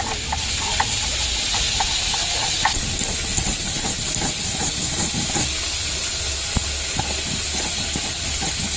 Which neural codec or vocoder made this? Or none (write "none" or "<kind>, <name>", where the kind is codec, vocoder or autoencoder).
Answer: none